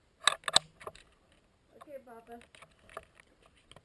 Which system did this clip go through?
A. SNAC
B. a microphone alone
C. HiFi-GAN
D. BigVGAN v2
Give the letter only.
B